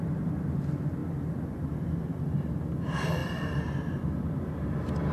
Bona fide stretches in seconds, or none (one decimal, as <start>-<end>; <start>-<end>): 0.0-5.1